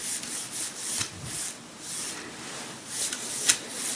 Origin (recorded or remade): recorded